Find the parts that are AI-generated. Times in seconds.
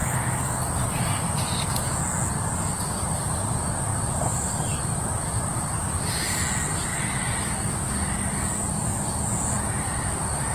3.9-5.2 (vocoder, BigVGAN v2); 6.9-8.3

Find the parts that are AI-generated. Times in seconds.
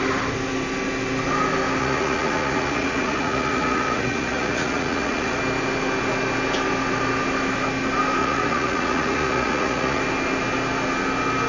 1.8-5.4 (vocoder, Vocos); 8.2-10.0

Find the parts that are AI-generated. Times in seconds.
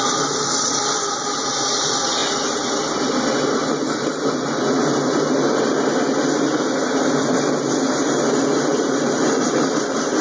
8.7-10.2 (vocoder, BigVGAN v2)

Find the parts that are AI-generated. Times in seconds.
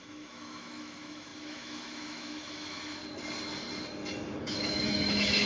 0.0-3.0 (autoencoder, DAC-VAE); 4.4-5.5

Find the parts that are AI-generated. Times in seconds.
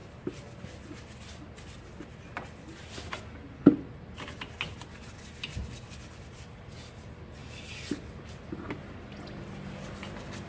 none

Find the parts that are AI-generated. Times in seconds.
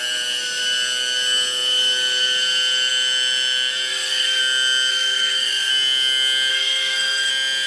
3.9-4.4 (codec, SNAC); 4.9-5.7; 6.5-7.3